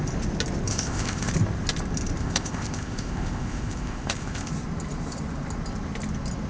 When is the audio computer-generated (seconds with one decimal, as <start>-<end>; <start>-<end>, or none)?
0.7-1.3; 2.2-4.5